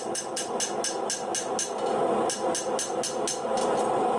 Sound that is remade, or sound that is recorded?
recorded